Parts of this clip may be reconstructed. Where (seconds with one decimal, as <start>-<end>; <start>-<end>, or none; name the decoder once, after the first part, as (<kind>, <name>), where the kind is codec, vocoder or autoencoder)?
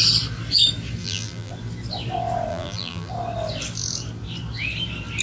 1.0-1.5 (vocoder, BigVGAN v2); 2.5-3.1